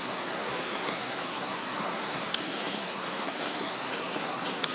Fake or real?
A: fake